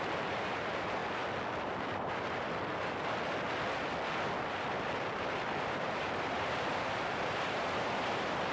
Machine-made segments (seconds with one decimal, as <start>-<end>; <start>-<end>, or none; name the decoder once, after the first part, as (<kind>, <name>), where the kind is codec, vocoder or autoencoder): 0.0-1.0 (vocoder, BigVGAN v2); 5.6-8.5